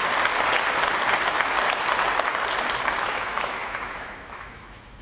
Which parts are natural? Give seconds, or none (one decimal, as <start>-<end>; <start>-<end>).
0.0-3.0